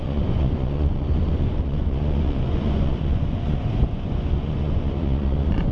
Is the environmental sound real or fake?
fake